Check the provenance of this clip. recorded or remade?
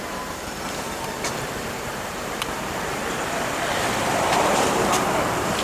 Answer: remade